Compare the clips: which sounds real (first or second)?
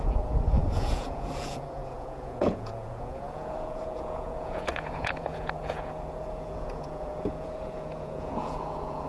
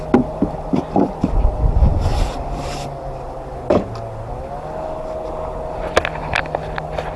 second